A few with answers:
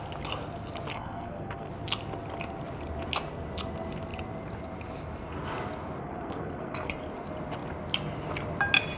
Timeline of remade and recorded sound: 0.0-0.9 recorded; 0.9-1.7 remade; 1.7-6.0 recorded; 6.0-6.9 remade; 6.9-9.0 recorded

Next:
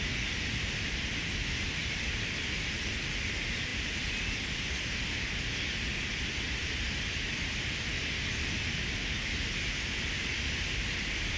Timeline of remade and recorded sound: 0.0-11.4 recorded

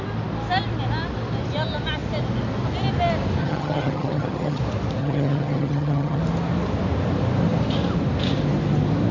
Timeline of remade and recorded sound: 0.0-3.4 recorded; 3.4-4.6 remade; 4.6-5.0 recorded; 5.0-6.2 remade; 6.2-9.1 recorded

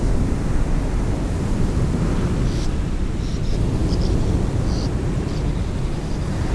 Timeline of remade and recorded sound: 0.0-6.5 recorded

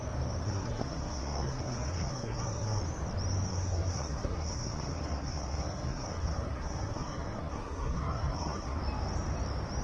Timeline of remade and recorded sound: 0.0-0.4 recorded; 0.4-2.8 remade; 2.8-3.5 recorded; 3.5-8.8 remade; 8.8-9.8 recorded